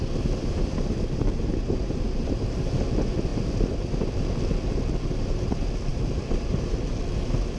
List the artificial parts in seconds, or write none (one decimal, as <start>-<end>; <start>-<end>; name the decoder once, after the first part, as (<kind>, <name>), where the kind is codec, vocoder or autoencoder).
0.4-2.7 (vocoder, BigVGAN v2); 5.9-6.8